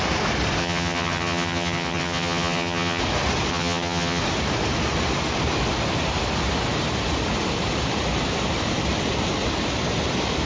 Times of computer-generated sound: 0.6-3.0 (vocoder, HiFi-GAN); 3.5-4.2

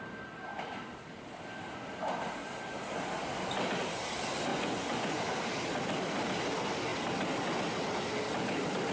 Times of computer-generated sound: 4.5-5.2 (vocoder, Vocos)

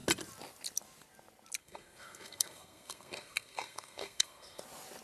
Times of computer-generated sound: 1.6-4.6 (codec, SNAC)